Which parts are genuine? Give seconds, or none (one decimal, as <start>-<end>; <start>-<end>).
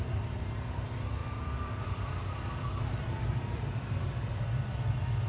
0.0-1.2; 4.4-5.3